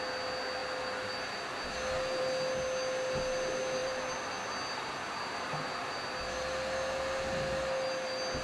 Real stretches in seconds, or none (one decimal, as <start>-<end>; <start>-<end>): 0.0-3.8; 4.3-8.4